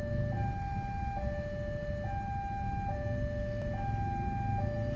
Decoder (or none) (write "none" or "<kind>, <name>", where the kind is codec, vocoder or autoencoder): none